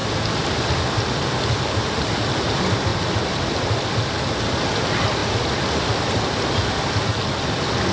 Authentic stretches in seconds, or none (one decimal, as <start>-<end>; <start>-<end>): 0.0-7.9